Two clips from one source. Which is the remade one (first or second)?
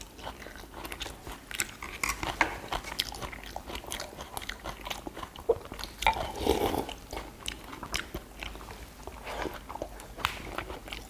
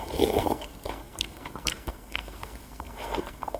second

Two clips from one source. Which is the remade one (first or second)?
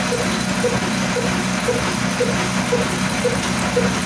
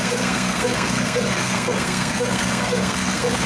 second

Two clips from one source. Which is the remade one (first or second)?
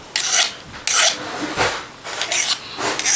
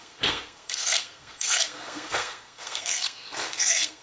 second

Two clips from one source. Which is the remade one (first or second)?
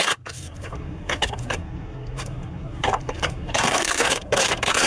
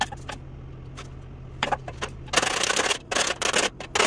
first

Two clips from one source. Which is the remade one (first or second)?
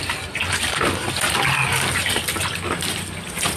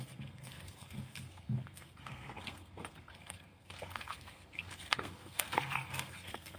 second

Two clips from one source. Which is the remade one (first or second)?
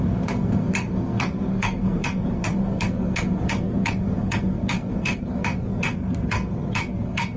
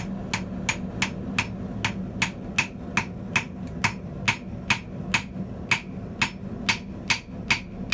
first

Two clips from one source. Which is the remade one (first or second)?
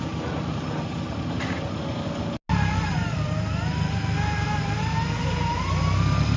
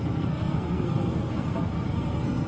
second